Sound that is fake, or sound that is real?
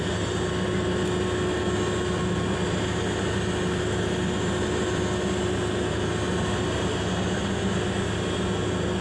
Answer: real